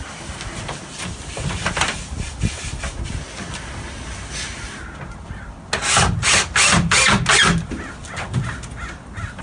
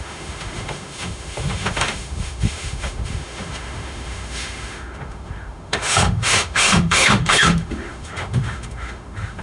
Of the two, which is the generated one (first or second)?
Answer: second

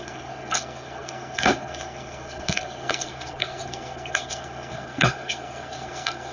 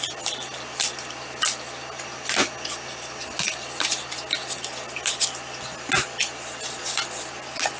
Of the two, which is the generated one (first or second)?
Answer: first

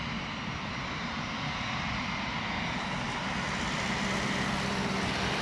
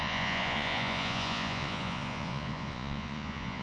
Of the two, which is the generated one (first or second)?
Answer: second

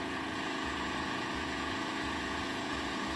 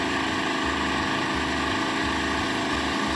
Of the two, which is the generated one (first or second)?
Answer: first